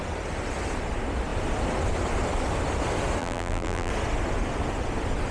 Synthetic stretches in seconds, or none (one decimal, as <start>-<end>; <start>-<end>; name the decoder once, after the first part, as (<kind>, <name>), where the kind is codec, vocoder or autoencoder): 3.2-3.9 (vocoder, BigVGAN v2)